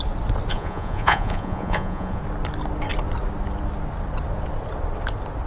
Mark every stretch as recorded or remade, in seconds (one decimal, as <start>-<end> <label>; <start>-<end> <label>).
0.0-0.5 recorded; 0.5-2.2 remade; 2.2-5.5 recorded